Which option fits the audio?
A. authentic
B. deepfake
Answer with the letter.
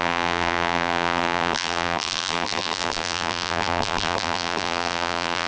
B